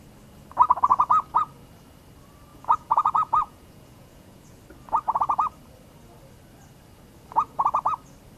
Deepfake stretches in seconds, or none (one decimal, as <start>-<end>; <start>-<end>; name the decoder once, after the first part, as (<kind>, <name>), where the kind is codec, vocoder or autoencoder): 2.5-4.6 (vocoder, Vocos)

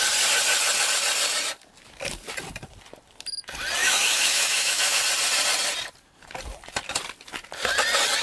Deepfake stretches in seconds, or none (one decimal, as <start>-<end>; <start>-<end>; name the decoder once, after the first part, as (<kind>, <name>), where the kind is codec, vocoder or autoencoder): 3.8-5.0 (autoencoder, DAC-VAE)

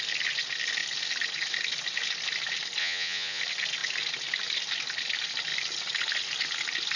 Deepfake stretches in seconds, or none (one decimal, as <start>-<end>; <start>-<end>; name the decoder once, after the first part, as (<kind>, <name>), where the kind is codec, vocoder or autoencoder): 2.8-3.4 (vocoder, Vocos)

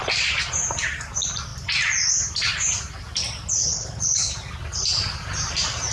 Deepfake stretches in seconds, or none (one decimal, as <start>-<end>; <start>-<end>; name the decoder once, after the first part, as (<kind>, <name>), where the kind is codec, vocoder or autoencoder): 3.7-4.3 (codec, HILCodec)

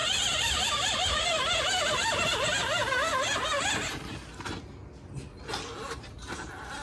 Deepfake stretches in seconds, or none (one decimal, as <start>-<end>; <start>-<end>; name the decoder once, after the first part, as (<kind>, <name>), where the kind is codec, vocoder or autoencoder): 0.0-2.8 (vocoder, BigVGAN v2); 3.5-4.8; 5.6-6.8